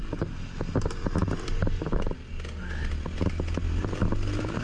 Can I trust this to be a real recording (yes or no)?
yes